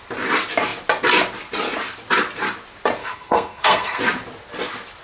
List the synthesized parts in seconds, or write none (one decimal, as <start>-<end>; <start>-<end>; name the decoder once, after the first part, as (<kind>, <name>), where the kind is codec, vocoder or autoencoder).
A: 3.0-4.0 (codec, SNAC)